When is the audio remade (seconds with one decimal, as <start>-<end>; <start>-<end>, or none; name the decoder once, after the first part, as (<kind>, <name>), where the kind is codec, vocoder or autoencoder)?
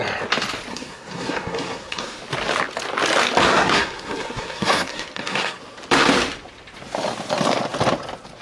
0.7-2.2 (codec, SNAC); 3.5-5.6